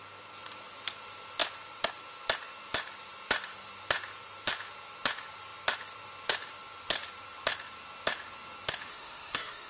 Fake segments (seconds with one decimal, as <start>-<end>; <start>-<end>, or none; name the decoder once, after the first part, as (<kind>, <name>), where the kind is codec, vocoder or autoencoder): 8.9-9.7 (autoencoder, DAC-VAE)